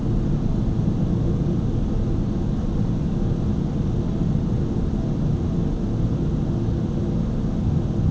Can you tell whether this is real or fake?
real